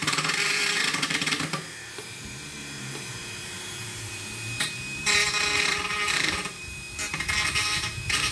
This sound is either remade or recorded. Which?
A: remade